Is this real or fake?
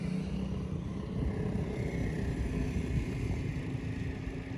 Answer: real